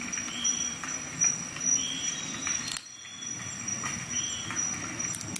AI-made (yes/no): no